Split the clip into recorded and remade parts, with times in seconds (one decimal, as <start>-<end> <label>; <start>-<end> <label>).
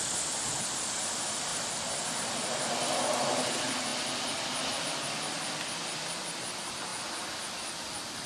0.0-3.9 remade; 3.9-4.8 recorded; 4.8-6.9 remade; 6.9-8.3 recorded